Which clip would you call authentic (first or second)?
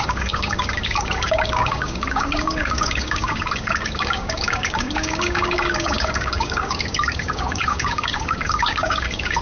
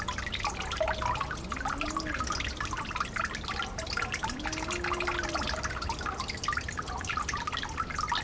second